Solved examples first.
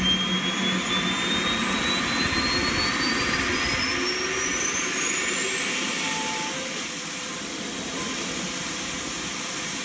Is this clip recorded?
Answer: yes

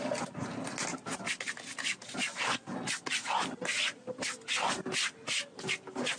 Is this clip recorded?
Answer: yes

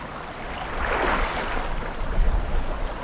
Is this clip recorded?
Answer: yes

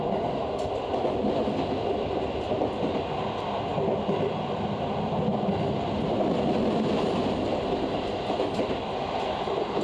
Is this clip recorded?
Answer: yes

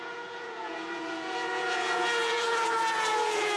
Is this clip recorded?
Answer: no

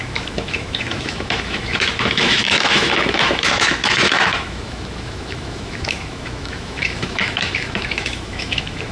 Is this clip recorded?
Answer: no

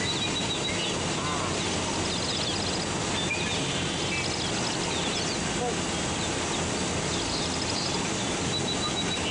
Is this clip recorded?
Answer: yes